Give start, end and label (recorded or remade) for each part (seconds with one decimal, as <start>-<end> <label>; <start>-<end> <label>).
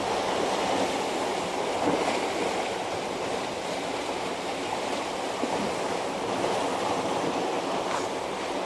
0.0-8.7 recorded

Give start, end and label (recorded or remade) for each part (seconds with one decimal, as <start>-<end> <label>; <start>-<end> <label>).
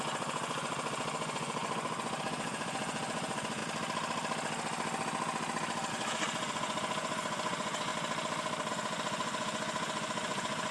0.0-3.6 remade; 3.6-5.9 recorded; 5.9-7.9 remade; 7.9-8.7 recorded; 8.7-10.7 remade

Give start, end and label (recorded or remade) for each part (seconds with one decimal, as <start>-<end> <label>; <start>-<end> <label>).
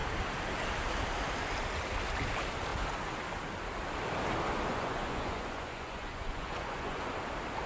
0.0-4.7 recorded; 4.7-7.1 remade; 7.1-7.7 recorded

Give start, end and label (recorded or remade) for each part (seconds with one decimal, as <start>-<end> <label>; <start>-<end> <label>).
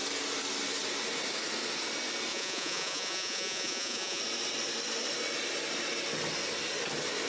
0.0-2.3 recorded; 2.3-4.2 remade; 4.2-7.3 recorded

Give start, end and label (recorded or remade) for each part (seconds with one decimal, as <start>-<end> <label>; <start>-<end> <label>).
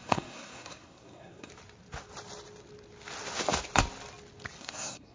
0.0-1.5 remade; 1.5-4.6 recorded; 4.6-5.1 remade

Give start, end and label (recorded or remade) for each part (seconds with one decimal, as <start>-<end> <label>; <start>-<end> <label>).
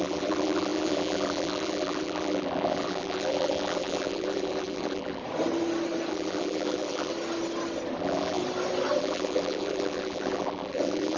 0.0-5.2 remade; 5.2-6.1 recorded; 6.1-7.1 remade; 7.1-8.0 recorded; 8.0-8.4 remade; 8.4-9.0 recorded; 9.0-11.2 remade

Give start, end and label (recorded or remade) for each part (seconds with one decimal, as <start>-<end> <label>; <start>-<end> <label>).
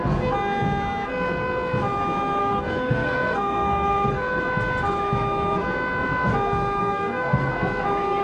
0.0-2.4 recorded; 2.4-4.4 remade; 4.4-6.8 recorded; 6.8-7.5 remade; 7.5-8.2 recorded